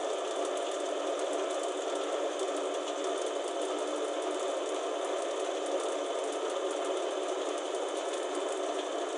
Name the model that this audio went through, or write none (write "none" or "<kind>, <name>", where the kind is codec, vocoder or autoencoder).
none